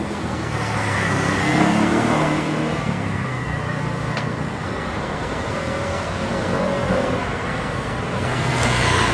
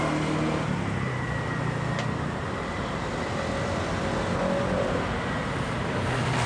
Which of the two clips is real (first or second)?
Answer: second